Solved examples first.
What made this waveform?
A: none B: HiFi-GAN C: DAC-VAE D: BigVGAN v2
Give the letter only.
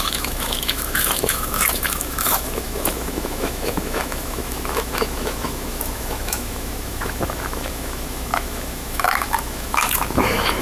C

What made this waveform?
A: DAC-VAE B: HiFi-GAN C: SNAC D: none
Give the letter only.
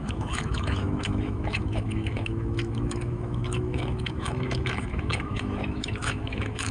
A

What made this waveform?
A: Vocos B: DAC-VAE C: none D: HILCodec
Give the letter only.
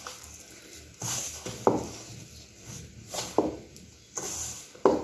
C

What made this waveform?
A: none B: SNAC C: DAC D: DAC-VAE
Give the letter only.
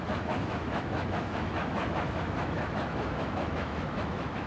D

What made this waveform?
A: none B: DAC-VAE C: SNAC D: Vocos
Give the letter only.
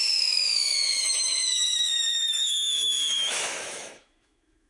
B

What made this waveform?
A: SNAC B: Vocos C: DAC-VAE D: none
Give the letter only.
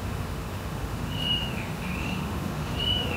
C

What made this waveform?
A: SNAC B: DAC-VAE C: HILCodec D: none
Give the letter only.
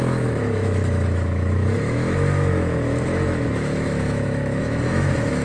B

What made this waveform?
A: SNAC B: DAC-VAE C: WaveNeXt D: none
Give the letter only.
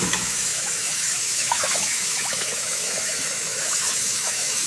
B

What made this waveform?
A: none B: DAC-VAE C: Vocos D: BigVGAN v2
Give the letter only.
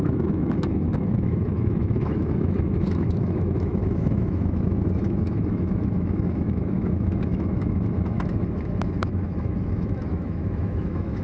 B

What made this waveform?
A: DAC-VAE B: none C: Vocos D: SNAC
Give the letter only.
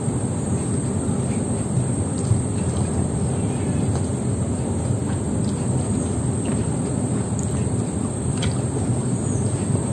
B